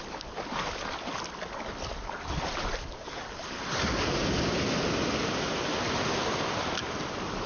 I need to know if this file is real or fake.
real